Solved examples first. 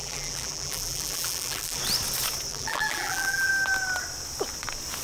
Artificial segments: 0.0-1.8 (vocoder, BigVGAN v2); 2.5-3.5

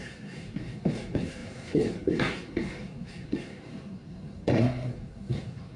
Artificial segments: 0.0-5.8 (codec, SNAC)

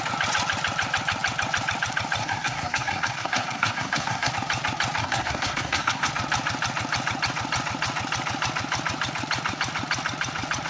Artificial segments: 2.2-4.3 (codec, SNAC); 5.0-6.1

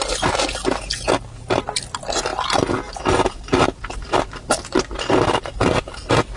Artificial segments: none